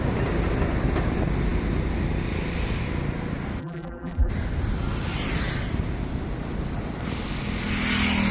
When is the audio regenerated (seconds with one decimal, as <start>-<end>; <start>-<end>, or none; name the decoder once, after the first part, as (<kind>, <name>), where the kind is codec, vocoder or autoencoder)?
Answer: 3.6-4.3 (vocoder, BigVGAN v2)

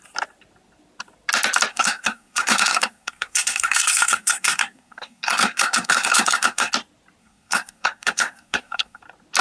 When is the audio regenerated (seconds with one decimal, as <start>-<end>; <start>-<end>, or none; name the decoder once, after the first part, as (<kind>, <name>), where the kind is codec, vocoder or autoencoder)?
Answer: 1.7-6.7 (codec, SNAC); 7.2-9.0

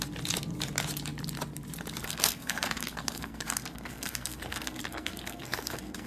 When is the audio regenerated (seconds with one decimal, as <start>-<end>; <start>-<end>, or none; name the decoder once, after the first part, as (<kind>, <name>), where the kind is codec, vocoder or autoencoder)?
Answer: 2.0-6.1 (codec, SNAC)

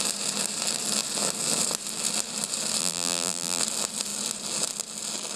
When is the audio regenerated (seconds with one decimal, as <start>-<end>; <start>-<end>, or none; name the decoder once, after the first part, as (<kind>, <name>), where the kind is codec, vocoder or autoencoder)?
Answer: 2.8-3.6 (vocoder, BigVGAN v2)

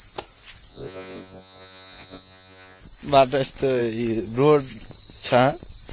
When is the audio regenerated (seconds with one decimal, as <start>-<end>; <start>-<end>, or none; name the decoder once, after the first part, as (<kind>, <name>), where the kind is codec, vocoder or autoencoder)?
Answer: 0.7-2.8 (vocoder, Vocos)